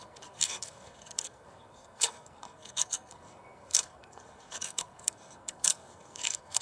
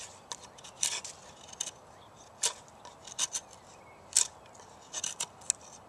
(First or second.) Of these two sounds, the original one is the second